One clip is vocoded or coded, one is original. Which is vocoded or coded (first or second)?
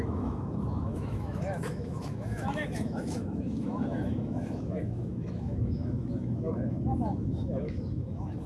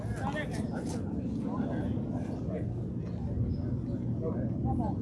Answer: first